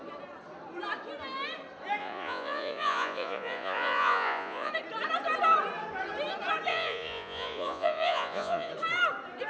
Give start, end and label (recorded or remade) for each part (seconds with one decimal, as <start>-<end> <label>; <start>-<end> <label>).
0.0-2.0 recorded; 2.0-4.7 remade; 4.7-6.7 recorded; 6.7-8.7 remade; 8.7-9.5 recorded